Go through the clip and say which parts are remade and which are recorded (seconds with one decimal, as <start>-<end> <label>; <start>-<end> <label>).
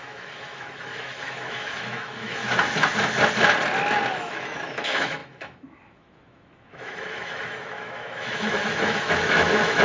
0.0-2.4 remade; 2.4-4.1 recorded; 4.1-9.8 remade